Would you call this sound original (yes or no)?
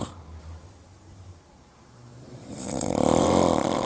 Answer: no